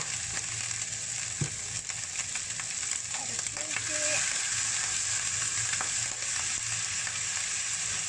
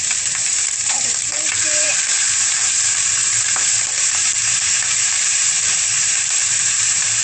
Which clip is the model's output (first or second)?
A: second